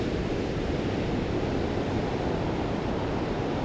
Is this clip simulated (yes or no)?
no